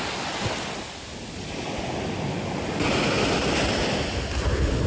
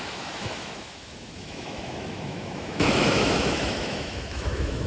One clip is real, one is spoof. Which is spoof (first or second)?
second